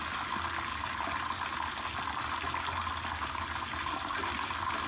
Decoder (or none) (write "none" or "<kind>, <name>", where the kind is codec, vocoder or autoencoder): none